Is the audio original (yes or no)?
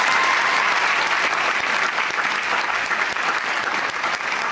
yes